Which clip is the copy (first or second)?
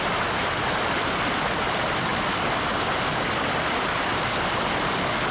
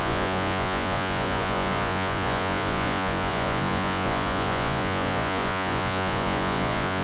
second